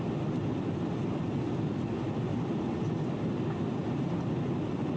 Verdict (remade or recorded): recorded